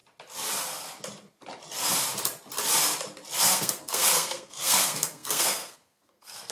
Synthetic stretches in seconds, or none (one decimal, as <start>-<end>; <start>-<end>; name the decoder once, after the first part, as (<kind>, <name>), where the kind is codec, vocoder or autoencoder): 3.4-6.5 (codec, SNAC)